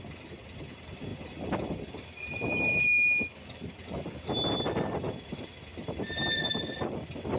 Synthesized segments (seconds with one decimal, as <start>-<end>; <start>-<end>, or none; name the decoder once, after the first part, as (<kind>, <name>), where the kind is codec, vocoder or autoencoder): none